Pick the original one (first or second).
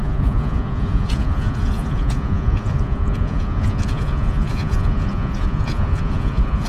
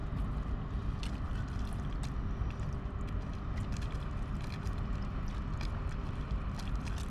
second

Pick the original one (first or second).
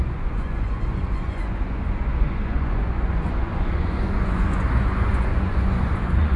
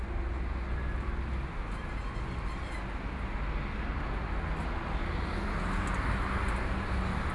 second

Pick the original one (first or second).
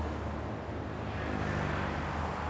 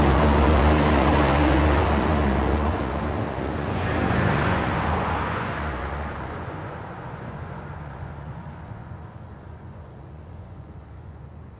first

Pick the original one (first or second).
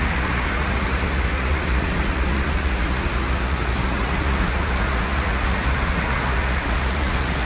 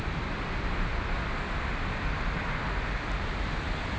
second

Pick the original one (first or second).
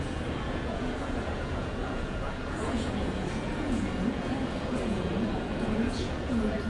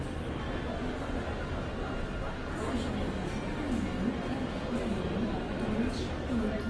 second